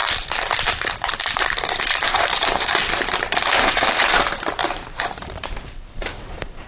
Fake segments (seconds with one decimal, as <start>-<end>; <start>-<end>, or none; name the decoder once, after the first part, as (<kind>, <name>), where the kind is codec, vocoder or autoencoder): 0.0-2.8 (vocoder, BigVGAN v2); 3.5-6.7